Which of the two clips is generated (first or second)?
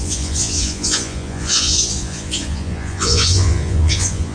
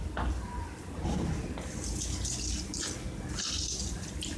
first